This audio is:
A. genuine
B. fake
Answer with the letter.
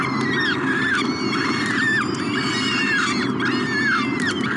A